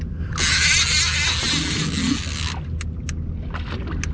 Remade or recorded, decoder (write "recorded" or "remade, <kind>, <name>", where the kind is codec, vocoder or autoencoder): recorded